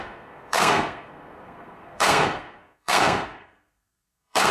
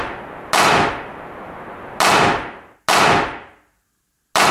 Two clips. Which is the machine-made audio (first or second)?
first